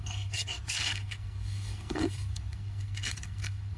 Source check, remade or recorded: remade